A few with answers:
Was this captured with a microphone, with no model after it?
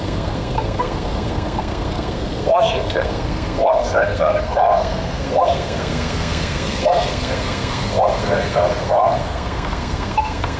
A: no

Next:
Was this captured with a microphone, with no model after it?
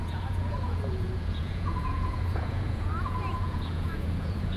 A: no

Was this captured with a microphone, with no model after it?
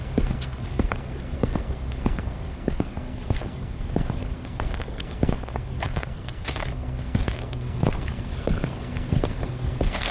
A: no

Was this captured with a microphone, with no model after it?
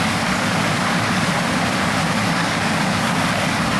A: no